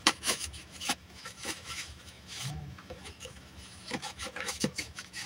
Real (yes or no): no